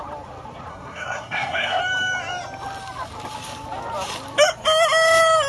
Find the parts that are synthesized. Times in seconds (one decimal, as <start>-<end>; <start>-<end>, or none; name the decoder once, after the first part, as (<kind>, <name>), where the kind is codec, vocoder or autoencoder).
0.7-1.8 (codec, SNAC)